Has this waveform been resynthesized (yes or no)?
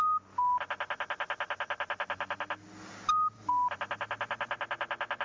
no